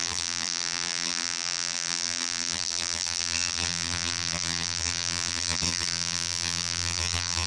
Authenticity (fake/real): fake